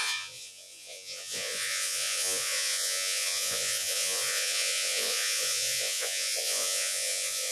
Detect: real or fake fake